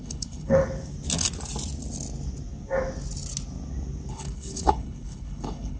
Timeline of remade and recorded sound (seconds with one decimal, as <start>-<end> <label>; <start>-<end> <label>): 0.0-0.6 remade; 0.6-4.1 recorded; 4.1-5.8 remade